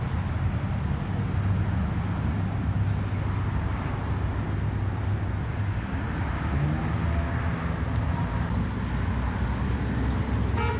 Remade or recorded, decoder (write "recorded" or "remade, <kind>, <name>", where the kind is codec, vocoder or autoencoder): recorded